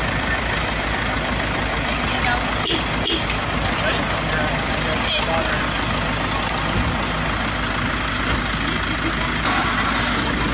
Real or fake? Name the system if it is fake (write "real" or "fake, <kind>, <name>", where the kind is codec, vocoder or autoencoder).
real